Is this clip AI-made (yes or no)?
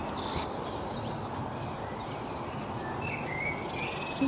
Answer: no